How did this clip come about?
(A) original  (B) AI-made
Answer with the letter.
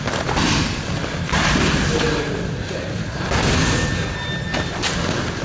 A